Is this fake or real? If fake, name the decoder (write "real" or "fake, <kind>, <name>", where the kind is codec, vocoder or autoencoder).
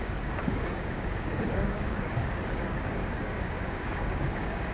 fake, codec, DAC